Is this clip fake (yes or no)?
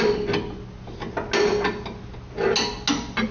no